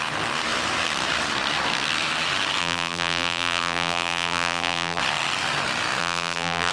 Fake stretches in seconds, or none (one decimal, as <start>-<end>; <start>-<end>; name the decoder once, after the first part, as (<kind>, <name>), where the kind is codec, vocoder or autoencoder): 2.6-5.0 (vocoder, BigVGAN v2); 6.0-6.7